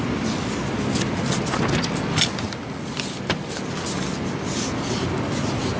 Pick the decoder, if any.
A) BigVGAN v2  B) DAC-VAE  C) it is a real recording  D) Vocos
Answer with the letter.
C